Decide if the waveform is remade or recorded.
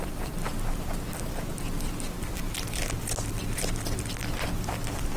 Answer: recorded